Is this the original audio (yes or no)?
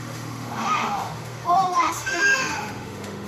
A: no